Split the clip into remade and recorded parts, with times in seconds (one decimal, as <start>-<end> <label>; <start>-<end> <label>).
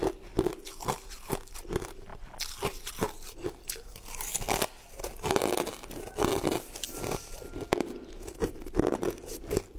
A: 0.0-9.8 recorded